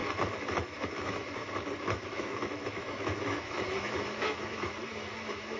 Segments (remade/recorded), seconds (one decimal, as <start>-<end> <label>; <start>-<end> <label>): 0.0-5.6 remade